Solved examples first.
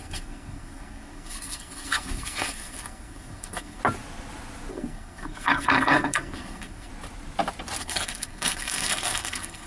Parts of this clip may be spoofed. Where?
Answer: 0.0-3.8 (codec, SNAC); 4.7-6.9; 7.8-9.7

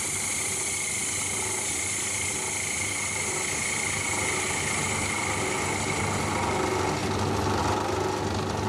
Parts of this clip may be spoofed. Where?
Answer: none

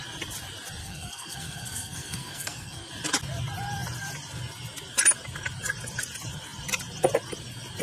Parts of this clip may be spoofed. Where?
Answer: 0.8-2.9 (codec, SNAC)

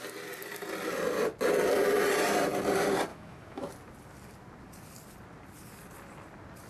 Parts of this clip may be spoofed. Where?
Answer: 3.1-3.7 (autoencoder, DAC-VAE)

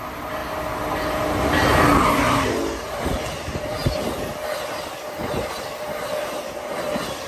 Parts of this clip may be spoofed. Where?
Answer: none

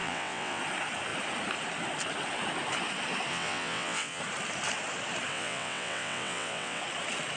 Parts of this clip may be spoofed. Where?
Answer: 0.0-0.6 (vocoder, WaveNeXt); 3.3-4.2; 5.3-6.8